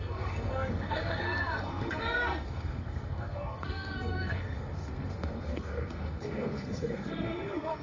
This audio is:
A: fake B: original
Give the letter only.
A